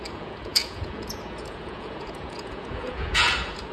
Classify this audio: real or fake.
fake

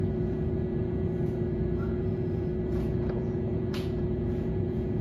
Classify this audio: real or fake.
fake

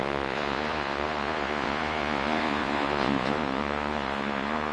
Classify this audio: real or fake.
fake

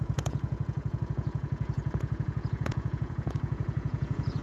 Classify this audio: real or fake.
fake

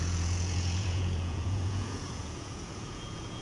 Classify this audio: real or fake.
fake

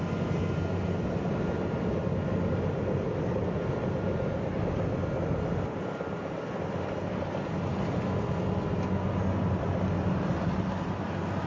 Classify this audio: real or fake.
real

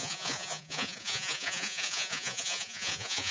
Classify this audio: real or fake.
fake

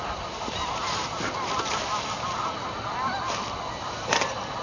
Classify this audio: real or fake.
real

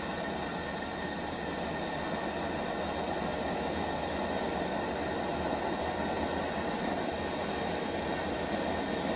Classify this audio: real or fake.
real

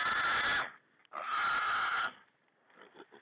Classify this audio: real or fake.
real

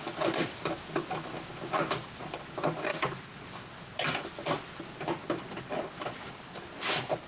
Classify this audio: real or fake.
real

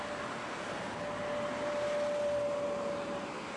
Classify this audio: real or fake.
real